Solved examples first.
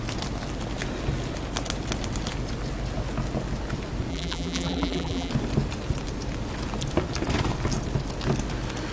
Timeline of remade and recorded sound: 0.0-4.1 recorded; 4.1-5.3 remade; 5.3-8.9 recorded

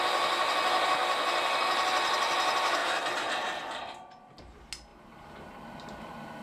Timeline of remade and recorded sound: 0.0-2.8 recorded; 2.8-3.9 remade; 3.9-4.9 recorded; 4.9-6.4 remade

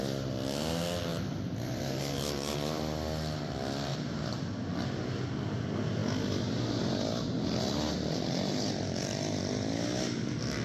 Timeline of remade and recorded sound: 0.0-3.9 recorded; 3.9-4.5 remade; 4.5-10.6 recorded